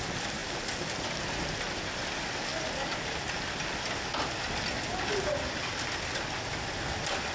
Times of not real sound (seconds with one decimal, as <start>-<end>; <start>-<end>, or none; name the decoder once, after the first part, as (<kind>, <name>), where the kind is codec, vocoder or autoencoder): none